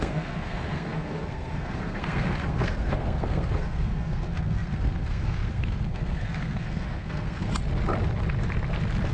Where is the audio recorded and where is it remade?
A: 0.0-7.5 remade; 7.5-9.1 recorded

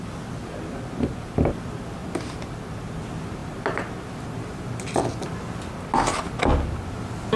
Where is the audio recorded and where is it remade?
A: 0.0-7.4 recorded

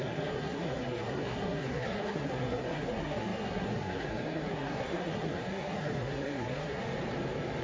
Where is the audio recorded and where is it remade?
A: 0.0-6.8 remade; 6.8-7.6 recorded

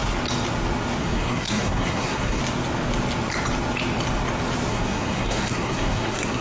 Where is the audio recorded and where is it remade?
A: 0.0-1.0 recorded; 1.0-2.4 remade; 2.4-4.7 recorded; 4.7-6.4 remade

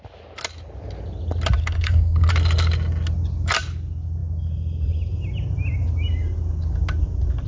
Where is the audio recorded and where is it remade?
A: 0.0-1.6 recorded; 1.6-2.3 remade; 2.3-7.5 recorded

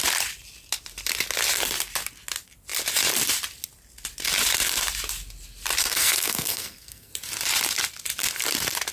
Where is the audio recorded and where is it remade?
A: 0.0-5.8 recorded; 5.8-7.1 remade; 7.1-8.9 recorded